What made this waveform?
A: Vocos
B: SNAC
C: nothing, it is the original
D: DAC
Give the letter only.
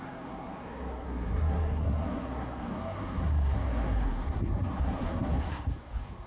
B